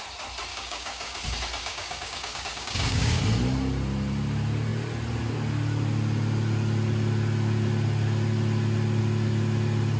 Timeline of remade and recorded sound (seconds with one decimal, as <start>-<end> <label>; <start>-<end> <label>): 0.0-0.5 recorded; 0.5-1.2 remade; 1.2-1.6 recorded; 1.6-3.2 remade; 3.2-10.0 recorded